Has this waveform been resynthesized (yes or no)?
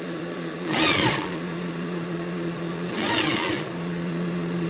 yes